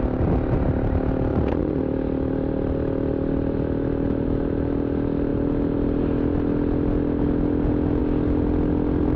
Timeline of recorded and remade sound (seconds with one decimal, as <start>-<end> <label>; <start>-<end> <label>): 0.0-1.3 recorded; 1.3-1.8 remade; 1.8-9.2 recorded